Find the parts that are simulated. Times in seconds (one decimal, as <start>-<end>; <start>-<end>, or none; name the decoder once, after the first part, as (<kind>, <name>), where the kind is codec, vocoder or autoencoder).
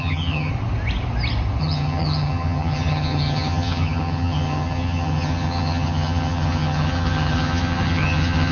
0.0-0.5 (vocoder, HiFi-GAN); 1.6-8.5